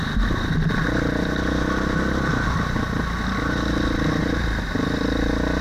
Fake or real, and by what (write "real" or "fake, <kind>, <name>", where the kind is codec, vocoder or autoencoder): real